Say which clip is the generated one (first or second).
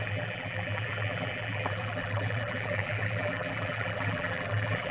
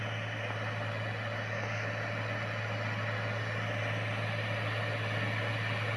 first